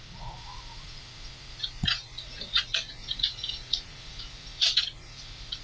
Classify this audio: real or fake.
fake